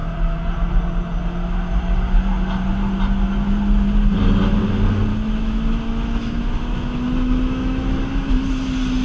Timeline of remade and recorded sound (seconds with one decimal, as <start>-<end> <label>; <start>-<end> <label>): 0.0-5.1 recorded; 5.1-8.3 remade; 8.3-9.0 recorded